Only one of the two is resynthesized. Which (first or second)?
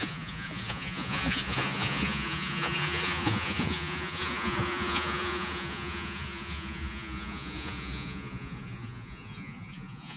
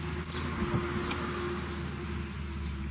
first